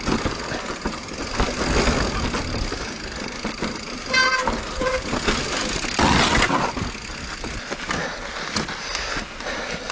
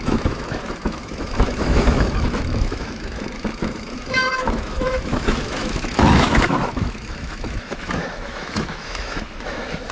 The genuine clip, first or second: first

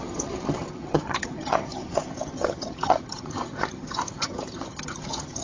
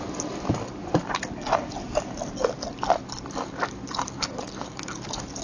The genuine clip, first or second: second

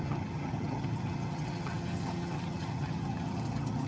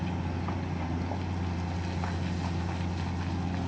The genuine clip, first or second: second